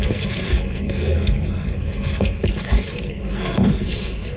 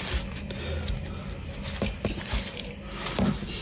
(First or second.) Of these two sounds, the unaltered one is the second